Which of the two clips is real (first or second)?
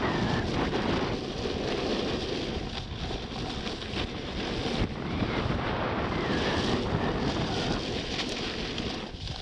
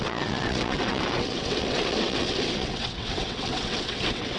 first